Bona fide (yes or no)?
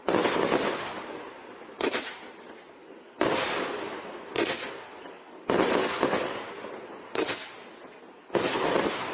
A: yes